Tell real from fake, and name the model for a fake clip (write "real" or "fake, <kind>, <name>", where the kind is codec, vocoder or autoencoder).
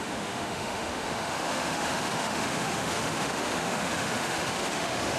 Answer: fake, autoencoder, DAC-VAE